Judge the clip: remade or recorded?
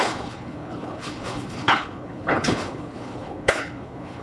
remade